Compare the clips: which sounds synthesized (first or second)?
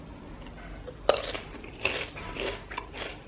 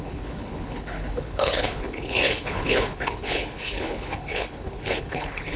second